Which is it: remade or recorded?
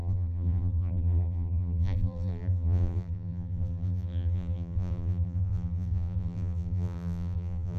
remade